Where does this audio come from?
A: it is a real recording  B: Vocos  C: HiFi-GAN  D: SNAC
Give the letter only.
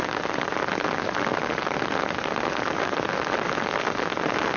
A